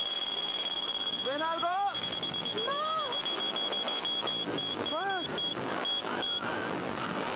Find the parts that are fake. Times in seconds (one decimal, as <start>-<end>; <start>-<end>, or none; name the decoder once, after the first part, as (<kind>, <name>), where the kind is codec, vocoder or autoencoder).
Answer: 0.0-4.9 (vocoder, BigVGAN v2); 5.5-7.4